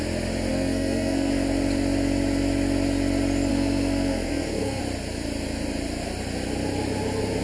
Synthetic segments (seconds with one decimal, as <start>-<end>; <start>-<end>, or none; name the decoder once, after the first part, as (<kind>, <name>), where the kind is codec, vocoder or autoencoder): 0.5-1.3 (codec, SNAC); 3.5-4.8